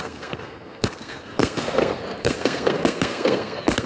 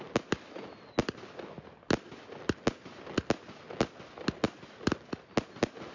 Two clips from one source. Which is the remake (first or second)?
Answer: first